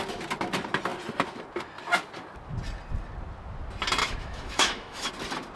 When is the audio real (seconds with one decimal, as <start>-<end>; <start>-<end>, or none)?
0.0-4.0; 5.1-5.6